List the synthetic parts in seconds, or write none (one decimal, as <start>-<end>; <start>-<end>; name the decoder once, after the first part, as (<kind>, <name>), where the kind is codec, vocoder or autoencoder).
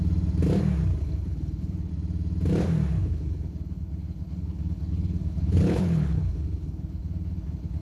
1.0-1.9 (codec, HILCodec); 3.0-7.8